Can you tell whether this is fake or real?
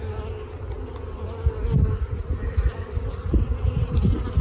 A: real